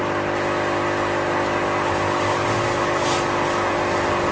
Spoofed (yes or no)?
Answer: no